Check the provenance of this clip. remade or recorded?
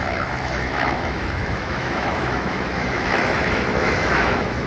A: remade